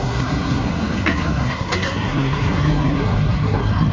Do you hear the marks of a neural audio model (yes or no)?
yes